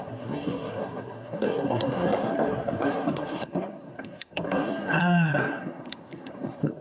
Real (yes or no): no